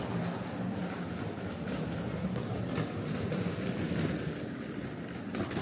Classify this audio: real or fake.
real